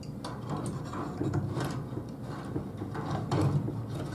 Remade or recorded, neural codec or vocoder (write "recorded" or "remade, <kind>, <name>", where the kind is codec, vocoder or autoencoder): recorded